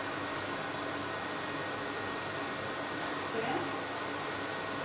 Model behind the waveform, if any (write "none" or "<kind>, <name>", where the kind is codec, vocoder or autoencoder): none